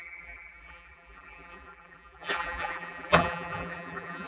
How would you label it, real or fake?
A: fake